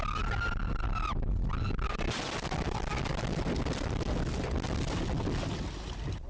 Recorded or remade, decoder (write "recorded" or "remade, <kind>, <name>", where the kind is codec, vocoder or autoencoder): recorded